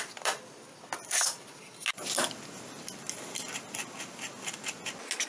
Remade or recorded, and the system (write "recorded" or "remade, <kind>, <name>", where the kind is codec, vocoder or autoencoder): recorded